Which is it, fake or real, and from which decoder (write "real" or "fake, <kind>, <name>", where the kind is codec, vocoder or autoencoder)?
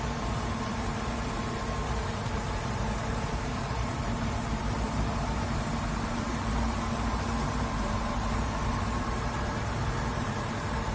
fake, vocoder, BigVGAN v2